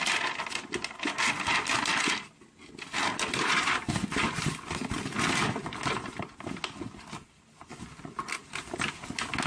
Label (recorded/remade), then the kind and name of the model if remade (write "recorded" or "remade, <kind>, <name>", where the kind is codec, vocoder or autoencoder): recorded